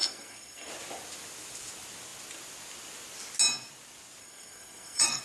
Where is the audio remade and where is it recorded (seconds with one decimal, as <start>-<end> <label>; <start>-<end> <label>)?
0.0-0.7 remade; 0.7-4.2 recorded; 4.2-5.2 remade